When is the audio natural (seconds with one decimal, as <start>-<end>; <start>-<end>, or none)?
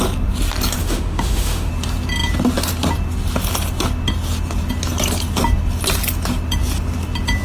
0.0-0.8; 1.7-7.4